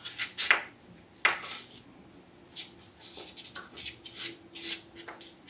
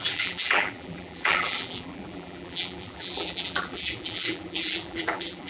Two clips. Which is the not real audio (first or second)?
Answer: second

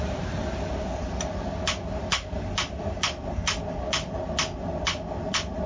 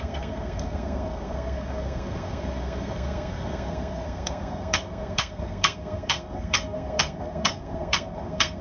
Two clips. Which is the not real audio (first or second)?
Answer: second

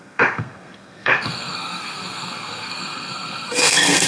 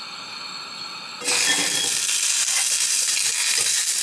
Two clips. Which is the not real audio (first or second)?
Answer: first